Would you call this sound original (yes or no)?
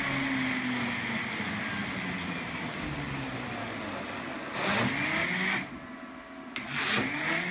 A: yes